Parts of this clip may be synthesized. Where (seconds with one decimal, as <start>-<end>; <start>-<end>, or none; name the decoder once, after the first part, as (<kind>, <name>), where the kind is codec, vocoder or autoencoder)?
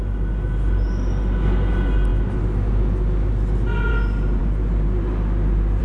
none